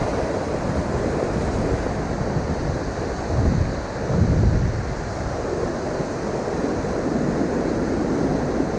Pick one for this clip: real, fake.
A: real